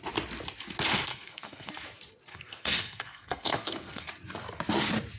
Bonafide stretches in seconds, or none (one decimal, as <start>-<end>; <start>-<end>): 0.0-1.1; 1.7-2.3; 4.1-5.2